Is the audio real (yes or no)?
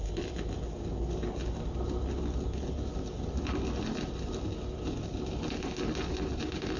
yes